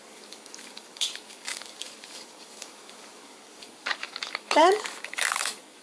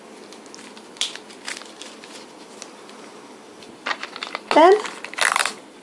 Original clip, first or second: second